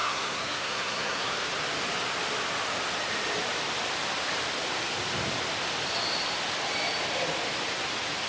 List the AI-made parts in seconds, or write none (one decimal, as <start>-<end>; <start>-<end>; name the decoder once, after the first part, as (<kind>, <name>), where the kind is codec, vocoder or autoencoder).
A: 0.0-1.3 (codec, SNAC)